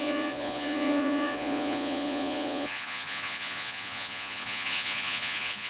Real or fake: fake